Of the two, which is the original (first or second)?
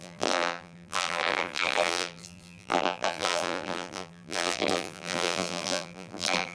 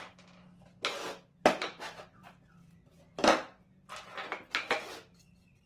second